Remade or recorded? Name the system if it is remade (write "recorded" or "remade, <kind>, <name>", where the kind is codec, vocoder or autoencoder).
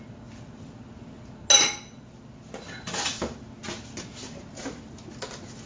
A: recorded